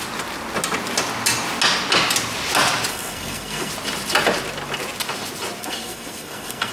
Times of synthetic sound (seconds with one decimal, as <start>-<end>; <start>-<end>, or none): 2.9-3.7; 5.6-6.7